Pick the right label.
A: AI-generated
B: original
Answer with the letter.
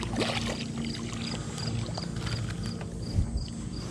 B